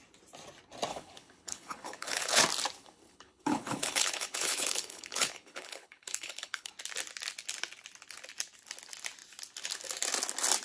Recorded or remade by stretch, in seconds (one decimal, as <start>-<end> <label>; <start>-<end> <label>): 0.0-0.9 recorded; 0.9-2.4 remade; 2.4-2.8 recorded; 2.8-6.7 remade; 6.7-10.6 recorded